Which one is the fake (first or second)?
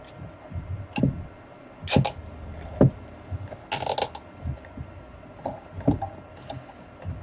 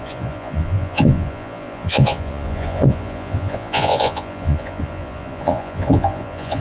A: second